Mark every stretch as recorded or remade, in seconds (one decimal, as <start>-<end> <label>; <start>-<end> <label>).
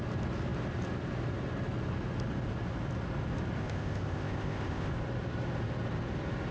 0.0-3.6 recorded; 3.6-4.9 remade; 4.9-6.5 recorded